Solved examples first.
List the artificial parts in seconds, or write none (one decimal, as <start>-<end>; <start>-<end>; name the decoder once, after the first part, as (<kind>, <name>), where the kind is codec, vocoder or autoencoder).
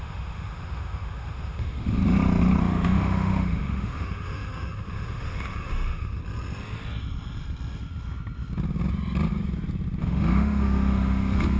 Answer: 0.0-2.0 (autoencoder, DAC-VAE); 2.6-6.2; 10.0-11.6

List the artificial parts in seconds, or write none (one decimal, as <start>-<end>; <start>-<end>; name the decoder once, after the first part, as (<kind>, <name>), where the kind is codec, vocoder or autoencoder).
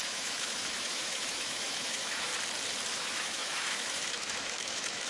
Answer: 0.0-2.3 (autoencoder, DAC-VAE); 2.9-5.1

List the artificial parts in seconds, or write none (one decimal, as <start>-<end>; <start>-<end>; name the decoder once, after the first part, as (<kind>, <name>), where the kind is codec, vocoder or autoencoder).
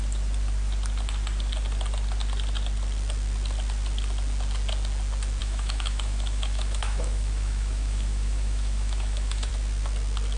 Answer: 5.4-9.5 (autoencoder, DAC-VAE)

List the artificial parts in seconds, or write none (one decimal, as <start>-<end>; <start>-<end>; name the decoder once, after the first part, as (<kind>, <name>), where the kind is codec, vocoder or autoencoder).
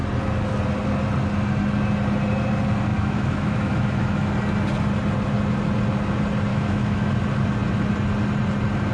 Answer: 2.9-4.3 (autoencoder, DAC-VAE); 6.5-7.1